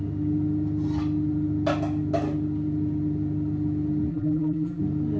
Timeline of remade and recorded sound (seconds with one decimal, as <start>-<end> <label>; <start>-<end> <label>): 0.0-4.1 recorded; 4.1-4.8 remade; 4.8-5.2 recorded